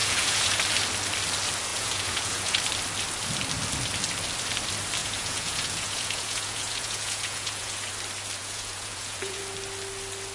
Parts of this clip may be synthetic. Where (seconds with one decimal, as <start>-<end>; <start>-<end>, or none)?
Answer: 0.0-0.6; 1.7-2.6; 5.0-7.9; 8.4-9.4